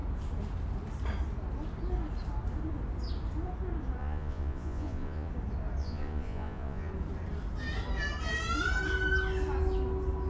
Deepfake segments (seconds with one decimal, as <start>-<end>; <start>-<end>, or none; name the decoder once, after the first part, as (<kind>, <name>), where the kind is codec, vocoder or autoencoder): 4.0-5.3 (vocoder, Vocos); 5.8-6.9